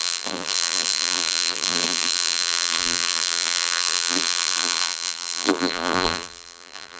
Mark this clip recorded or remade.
remade